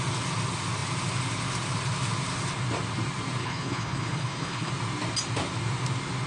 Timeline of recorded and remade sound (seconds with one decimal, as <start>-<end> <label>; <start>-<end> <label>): 0.0-3.4 recorded; 3.4-4.7 remade; 4.7-6.3 recorded